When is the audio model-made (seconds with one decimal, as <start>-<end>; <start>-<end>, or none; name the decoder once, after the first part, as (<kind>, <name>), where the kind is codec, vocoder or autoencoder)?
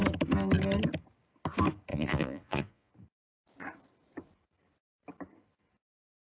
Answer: 1.9-2.9 (vocoder, Vocos)